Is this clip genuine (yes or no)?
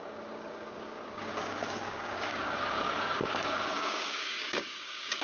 no